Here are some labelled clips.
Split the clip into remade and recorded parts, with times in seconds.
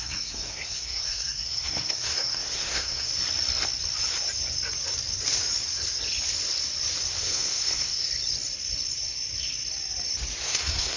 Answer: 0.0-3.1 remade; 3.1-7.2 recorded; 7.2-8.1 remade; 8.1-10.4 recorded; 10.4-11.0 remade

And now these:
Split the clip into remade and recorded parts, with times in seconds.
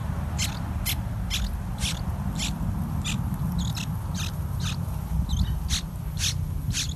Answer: 0.0-7.0 recorded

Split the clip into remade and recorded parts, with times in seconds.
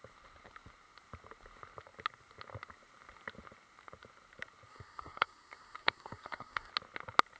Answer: 0.0-4.7 recorded; 4.7-6.7 remade; 6.7-7.4 recorded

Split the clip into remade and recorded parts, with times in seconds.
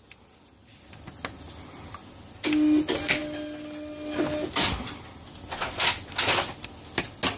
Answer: 0.0-7.4 recorded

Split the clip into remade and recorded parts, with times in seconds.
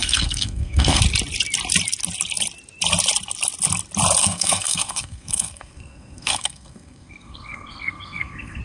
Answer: 0.0-1.0 remade; 1.0-4.2 recorded; 4.2-8.6 remade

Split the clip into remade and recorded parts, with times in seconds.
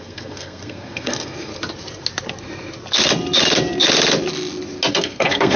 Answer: 0.0-1.5 remade; 1.5-4.9 recorded; 4.9-5.6 remade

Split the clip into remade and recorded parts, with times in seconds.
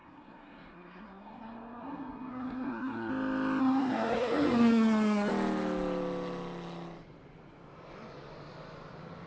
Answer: 0.0-3.1 remade; 3.1-3.6 recorded; 3.6-5.3 remade; 5.3-9.3 recorded